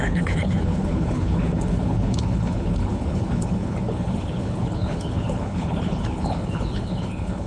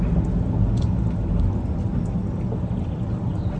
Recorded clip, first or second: second